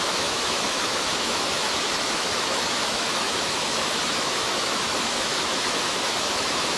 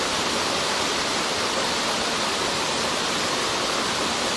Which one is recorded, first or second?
second